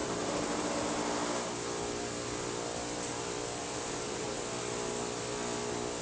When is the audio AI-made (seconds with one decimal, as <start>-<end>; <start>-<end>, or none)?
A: 0.0-0.7; 3.6-4.6